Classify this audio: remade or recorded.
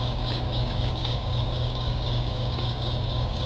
remade